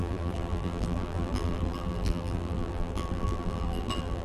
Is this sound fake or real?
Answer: fake